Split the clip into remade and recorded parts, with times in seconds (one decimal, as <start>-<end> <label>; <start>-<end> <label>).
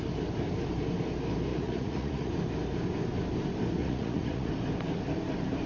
0.0-1.5 recorded; 1.5-2.3 remade; 2.3-3.8 recorded; 3.8-4.5 remade; 4.5-5.7 recorded